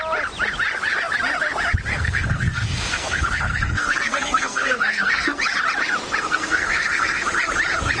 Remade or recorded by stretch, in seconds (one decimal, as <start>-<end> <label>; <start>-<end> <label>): 0.0-1.9 recorded; 1.9-5.4 remade; 5.4-6.2 recorded; 6.2-7.2 remade; 7.2-8.0 recorded